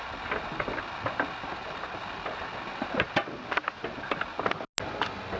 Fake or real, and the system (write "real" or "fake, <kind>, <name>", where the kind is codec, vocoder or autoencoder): real